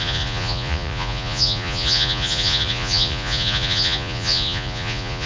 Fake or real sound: fake